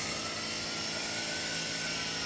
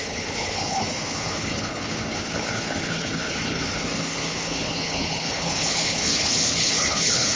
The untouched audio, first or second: first